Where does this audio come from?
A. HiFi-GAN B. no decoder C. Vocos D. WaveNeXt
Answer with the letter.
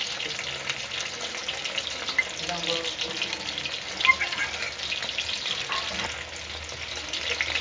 B